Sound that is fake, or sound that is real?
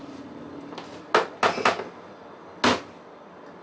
real